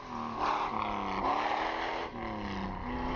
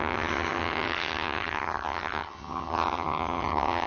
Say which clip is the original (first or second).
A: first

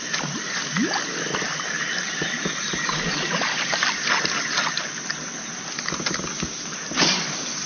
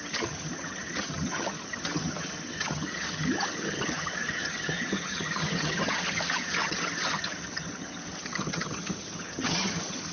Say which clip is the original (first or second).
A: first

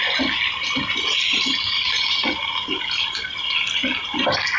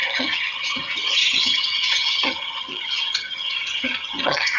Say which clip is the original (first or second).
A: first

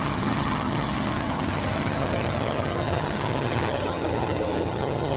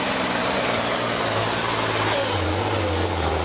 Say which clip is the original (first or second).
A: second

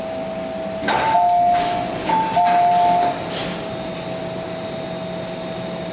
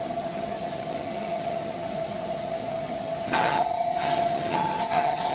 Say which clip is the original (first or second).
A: first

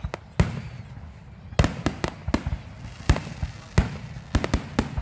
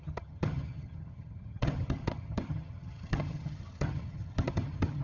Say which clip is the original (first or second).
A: first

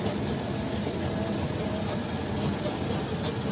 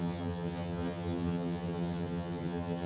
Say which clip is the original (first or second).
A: first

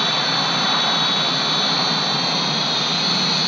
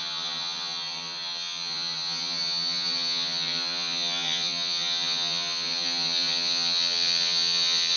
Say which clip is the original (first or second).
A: first